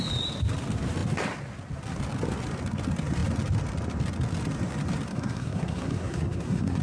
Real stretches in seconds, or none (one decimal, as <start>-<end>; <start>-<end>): 0.0-5.1